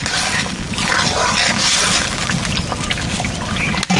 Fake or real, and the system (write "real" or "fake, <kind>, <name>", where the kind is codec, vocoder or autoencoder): real